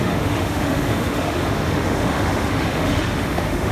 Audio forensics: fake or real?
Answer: fake